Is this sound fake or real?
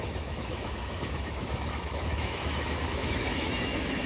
fake